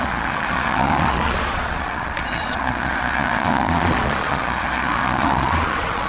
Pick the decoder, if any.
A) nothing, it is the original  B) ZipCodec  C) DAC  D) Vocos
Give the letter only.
D